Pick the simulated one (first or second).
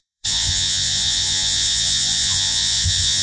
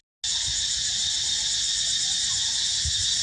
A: first